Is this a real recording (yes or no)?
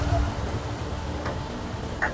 yes